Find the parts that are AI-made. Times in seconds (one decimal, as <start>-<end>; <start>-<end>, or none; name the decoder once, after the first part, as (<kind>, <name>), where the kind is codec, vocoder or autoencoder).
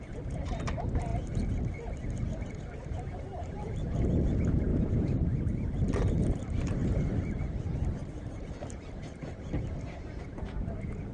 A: 0.0-1.1 (vocoder, BigVGAN v2); 2.7-11.1